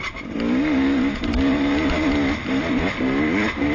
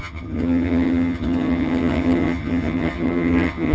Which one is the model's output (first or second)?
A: second